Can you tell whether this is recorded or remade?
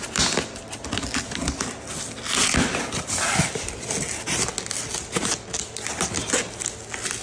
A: recorded